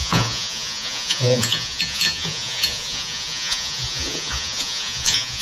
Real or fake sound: fake